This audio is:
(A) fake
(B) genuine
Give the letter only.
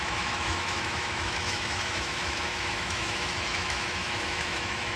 A